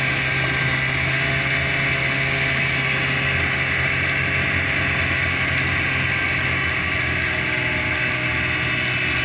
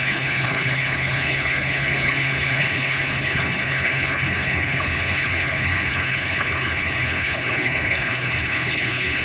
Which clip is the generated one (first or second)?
second